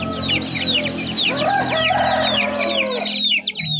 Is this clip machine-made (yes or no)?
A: yes